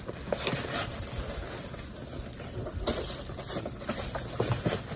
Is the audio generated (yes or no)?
no